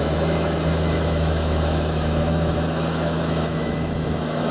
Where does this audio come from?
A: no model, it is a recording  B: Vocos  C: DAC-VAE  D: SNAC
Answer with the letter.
C